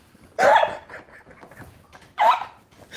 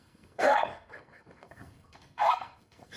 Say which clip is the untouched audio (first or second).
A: first